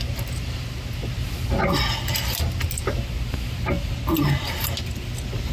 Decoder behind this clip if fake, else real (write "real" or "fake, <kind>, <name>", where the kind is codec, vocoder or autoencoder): real